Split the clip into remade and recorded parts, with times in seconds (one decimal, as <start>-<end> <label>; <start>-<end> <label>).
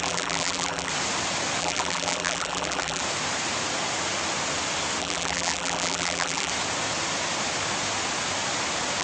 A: 0.0-0.9 remade; 0.9-1.6 recorded; 1.6-3.0 remade; 3.0-5.0 recorded; 5.0-6.5 remade; 6.5-9.0 recorded